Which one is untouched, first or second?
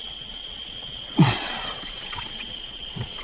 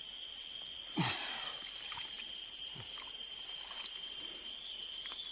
second